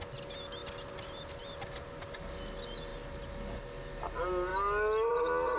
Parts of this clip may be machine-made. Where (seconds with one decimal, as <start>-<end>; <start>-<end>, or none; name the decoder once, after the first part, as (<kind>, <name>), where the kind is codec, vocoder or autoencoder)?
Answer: none